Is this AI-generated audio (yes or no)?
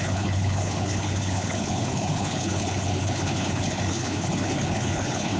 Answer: yes